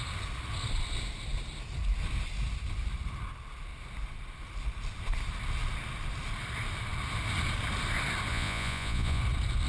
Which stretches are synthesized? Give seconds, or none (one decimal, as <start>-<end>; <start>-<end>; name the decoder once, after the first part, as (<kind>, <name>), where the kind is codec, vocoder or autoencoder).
8.3-9.2 (vocoder, Vocos)